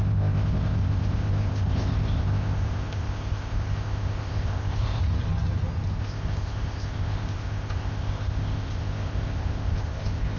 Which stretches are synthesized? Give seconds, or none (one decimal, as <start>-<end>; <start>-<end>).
0.0-5.0; 6.0-10.4